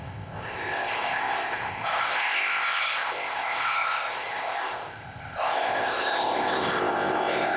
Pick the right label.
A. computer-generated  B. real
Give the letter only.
A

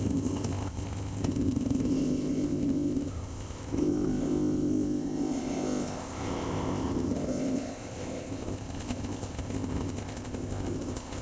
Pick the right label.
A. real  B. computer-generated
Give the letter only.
B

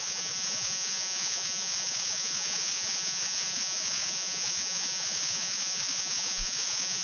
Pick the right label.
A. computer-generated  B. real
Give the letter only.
A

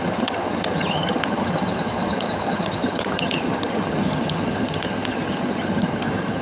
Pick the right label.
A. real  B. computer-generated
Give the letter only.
B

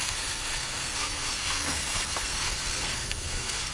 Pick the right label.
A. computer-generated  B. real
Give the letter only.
A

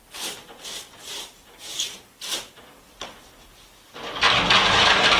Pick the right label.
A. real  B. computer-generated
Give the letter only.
A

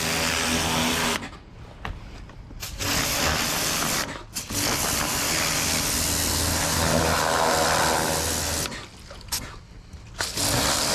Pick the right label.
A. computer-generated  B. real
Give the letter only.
B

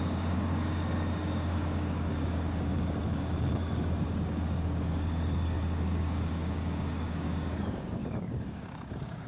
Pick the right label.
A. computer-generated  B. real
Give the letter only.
A